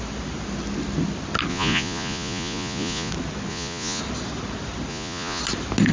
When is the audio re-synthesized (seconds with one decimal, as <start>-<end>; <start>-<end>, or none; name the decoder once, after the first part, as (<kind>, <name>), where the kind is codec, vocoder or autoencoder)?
1.5-3.1 (vocoder, Vocos); 3.5-4.0; 4.9-5.4